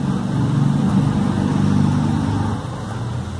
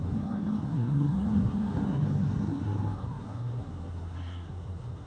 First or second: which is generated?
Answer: second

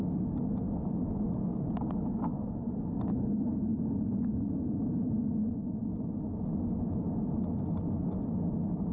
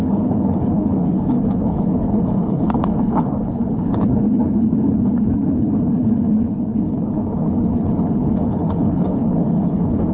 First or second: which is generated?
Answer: second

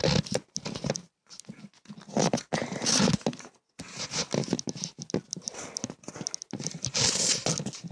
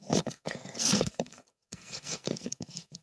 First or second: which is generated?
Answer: second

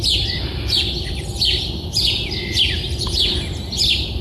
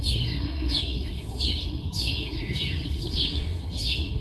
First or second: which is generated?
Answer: second